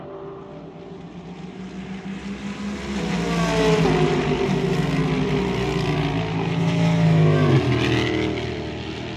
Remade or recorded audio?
recorded